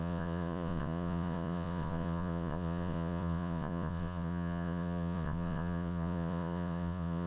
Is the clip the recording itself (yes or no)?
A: no